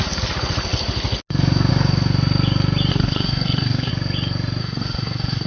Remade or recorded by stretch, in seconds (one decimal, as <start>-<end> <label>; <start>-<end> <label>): 0.0-2.9 recorded; 2.9-3.9 remade; 3.9-4.6 recorded; 4.6-5.5 remade